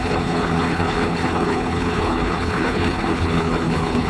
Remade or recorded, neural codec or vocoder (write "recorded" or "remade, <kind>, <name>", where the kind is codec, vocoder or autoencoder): remade, codec, HILCodec